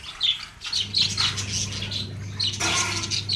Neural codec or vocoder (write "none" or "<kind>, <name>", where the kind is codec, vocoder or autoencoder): none